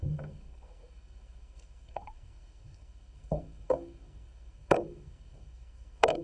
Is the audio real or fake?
fake